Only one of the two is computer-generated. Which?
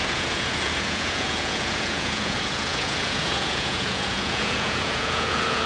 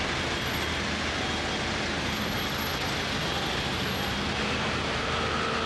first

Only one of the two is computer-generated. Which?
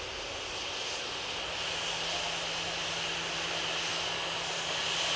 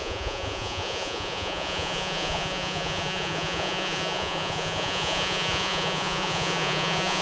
second